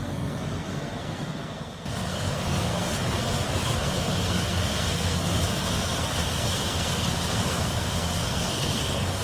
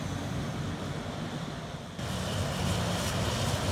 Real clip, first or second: second